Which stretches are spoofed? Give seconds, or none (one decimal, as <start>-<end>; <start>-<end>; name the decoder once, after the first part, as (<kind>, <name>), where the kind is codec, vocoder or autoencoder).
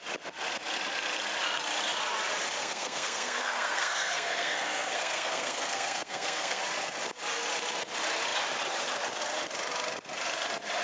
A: 2.6-6.6 (codec, SNAC)